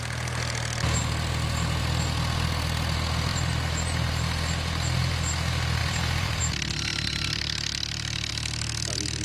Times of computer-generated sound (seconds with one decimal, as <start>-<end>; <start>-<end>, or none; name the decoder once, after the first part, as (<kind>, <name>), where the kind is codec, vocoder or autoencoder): 3.3-4.1 (vocoder, BigVGAN v2); 5.8-6.4